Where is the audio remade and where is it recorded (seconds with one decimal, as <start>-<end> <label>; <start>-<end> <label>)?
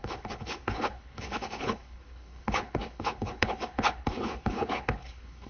0.0-5.5 remade